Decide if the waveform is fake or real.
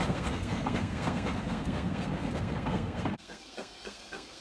fake